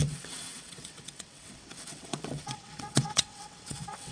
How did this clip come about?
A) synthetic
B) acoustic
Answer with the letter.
A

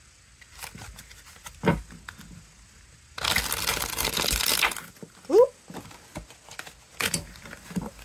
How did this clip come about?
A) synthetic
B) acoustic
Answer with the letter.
B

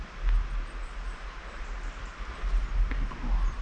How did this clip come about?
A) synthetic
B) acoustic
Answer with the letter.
B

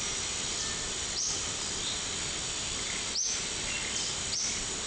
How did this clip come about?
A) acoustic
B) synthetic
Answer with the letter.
A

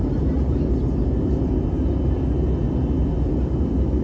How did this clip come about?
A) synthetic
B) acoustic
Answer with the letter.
B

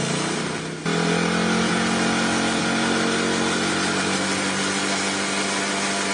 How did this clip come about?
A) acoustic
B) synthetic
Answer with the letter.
A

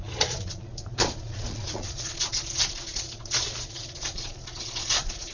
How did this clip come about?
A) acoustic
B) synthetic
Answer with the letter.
B